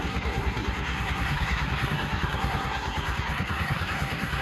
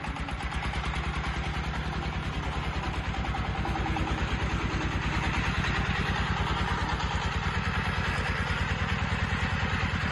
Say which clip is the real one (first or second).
second